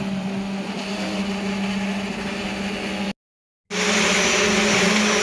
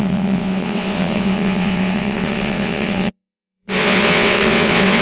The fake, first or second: second